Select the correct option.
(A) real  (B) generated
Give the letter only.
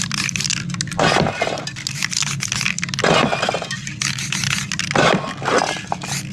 A